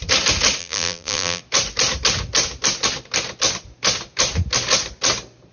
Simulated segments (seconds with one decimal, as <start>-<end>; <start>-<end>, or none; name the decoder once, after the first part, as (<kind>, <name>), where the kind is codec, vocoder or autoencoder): 0.6-1.4 (vocoder, BigVGAN v2)